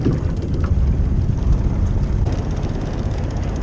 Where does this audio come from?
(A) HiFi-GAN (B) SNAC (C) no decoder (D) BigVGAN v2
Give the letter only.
D